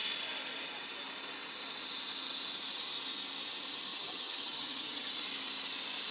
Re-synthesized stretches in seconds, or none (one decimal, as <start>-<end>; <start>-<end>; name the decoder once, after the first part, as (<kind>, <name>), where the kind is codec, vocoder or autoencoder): 3.9-5.1 (vocoder, HiFi-GAN)